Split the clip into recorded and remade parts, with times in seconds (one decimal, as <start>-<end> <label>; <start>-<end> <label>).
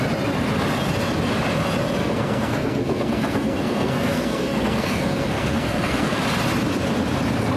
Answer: 0.0-2.0 recorded; 2.0-6.2 remade; 6.2-7.6 recorded